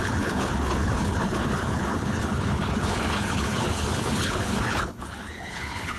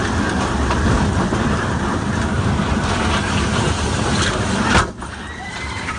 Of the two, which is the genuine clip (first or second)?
second